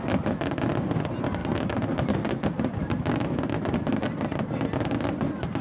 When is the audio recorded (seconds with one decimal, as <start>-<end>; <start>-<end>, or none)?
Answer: 0.0-5.6